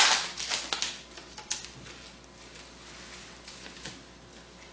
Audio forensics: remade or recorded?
recorded